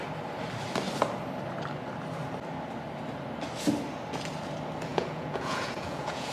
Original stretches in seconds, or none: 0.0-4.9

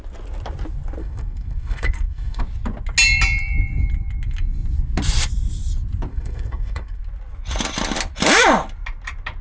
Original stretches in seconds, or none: 0.0-1.0; 2.4-6.1; 7.0-9.4

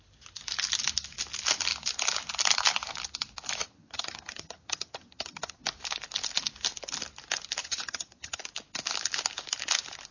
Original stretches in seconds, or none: 0.0-3.6; 5.6-7.6; 8.4-10.1

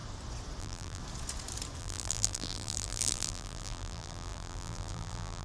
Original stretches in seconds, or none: 0.0-0.6; 1.0-1.8

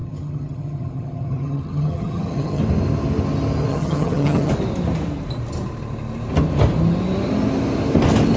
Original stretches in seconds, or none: 2.6-3.7; 4.5-8.4

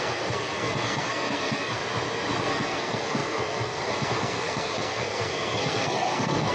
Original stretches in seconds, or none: 1.8-2.4

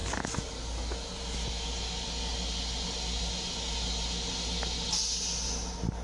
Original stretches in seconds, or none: 0.0-6.0